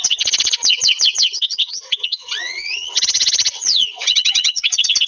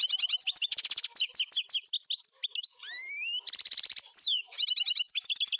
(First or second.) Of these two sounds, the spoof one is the first